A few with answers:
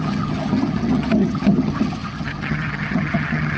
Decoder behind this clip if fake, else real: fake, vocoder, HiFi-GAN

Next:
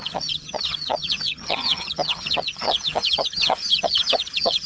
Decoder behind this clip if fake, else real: fake, vocoder, HiFi-GAN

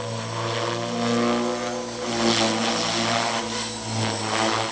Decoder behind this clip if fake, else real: real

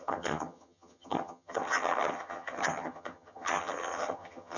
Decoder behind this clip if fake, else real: fake, vocoder, HiFi-GAN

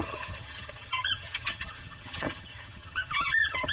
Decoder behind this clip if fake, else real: fake, vocoder, HiFi-GAN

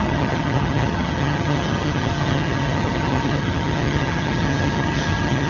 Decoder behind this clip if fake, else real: fake, vocoder, HiFi-GAN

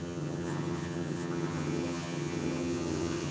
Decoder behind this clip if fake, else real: fake, vocoder, HiFi-GAN